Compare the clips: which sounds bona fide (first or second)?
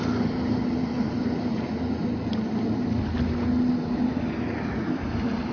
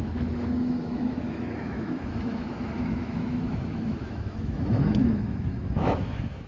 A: first